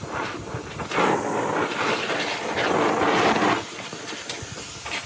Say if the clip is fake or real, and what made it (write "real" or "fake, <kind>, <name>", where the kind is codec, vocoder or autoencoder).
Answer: real